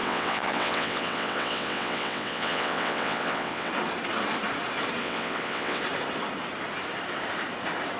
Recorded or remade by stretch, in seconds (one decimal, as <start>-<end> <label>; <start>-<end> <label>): 0.0-3.7 remade; 3.7-5.0 recorded; 5.0-5.8 remade; 5.8-8.0 recorded